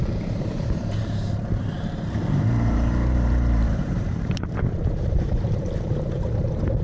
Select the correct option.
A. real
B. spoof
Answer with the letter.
B